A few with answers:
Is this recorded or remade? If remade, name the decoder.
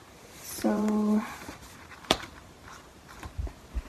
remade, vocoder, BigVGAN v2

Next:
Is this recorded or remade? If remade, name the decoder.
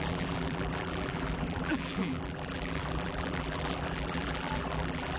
remade, vocoder, BigVGAN v2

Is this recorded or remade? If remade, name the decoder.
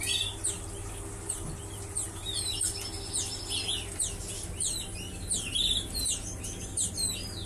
recorded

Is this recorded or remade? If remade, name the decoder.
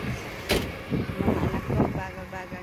recorded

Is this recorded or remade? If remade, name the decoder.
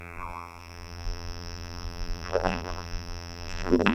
remade, vocoder, BigVGAN v2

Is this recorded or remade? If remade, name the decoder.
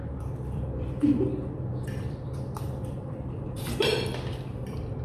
remade, vocoder, BigVGAN v2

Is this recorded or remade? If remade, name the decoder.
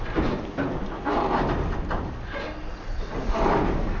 recorded